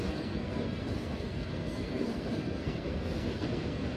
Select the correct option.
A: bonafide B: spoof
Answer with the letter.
B